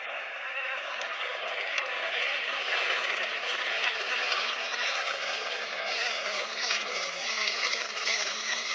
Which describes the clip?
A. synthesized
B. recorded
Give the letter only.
A